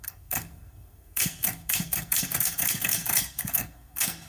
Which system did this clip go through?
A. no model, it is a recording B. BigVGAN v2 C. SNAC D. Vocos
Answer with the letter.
C